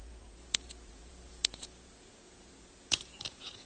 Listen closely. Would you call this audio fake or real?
fake